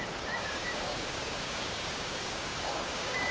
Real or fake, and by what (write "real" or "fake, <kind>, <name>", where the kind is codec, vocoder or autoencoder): fake, codec, DAC